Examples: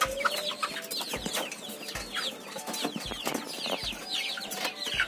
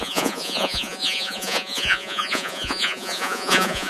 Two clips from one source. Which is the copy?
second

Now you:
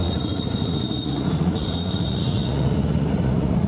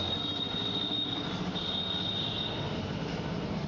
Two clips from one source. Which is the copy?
first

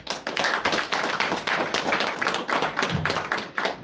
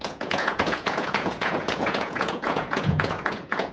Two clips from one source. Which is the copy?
second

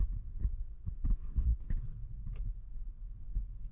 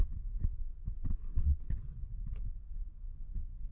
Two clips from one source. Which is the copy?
second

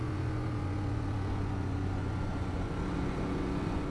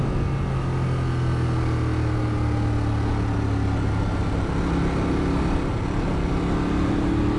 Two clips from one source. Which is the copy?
first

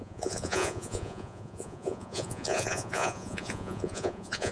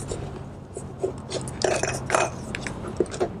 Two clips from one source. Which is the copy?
first